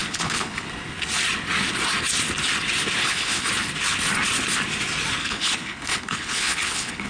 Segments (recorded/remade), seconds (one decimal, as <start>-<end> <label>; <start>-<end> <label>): 0.0-0.7 remade; 0.7-3.0 recorded; 3.0-3.5 remade; 3.5-5.2 recorded; 5.2-7.1 remade